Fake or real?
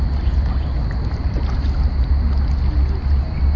real